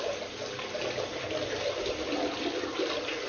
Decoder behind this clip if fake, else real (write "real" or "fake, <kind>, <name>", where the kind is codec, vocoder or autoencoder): real